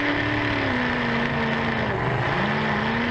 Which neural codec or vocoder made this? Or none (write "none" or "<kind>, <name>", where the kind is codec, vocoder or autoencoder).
none